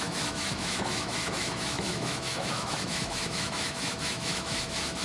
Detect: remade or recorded remade